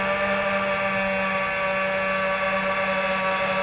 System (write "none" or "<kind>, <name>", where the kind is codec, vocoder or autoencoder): none